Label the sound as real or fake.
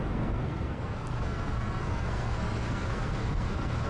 fake